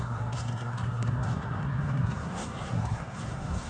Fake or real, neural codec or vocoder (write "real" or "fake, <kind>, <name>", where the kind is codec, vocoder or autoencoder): fake, codec, SNAC